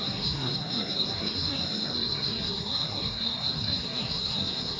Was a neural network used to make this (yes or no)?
yes